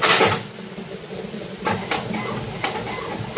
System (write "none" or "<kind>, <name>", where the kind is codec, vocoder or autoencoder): none